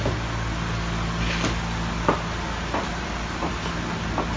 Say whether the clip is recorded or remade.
recorded